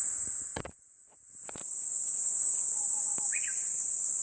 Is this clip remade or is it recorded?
remade